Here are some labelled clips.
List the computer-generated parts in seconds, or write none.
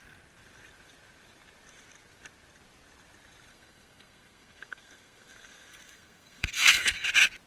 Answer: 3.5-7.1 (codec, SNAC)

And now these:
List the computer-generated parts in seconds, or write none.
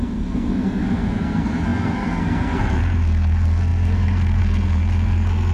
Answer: 0.0-5.5 (codec, SNAC)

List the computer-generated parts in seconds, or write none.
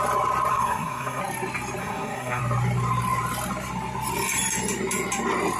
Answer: 0.5-1.2 (codec, SNAC); 1.8-2.4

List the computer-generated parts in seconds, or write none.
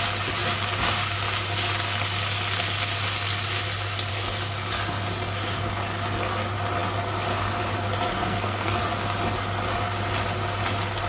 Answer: 8.1-8.8 (codec, SNAC)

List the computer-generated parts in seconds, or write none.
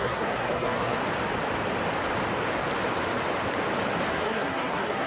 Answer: 0.0-1.0 (codec, SNAC); 4.1-5.1